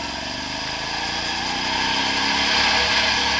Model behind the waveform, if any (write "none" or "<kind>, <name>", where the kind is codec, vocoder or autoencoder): none